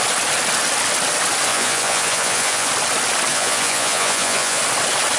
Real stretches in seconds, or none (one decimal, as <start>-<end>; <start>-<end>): 0.0-1.5; 2.7-3.3; 4.6-5.2